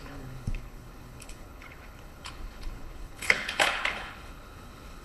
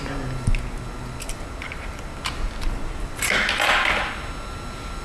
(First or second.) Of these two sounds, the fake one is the first